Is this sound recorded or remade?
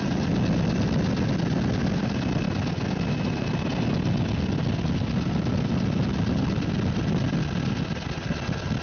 recorded